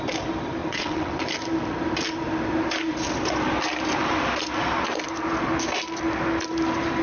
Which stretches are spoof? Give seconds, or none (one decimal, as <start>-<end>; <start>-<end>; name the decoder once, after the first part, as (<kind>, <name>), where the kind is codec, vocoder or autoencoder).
0.6-1.1 (vocoder, WaveNeXt)